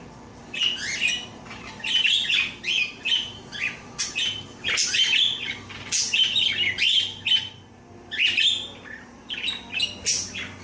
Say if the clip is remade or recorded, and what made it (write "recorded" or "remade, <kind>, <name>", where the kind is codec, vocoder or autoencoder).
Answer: recorded